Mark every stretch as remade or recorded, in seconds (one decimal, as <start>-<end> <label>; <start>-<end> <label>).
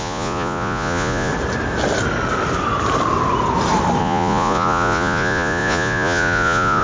0.0-1.3 remade; 1.3-4.0 recorded; 4.0-6.8 remade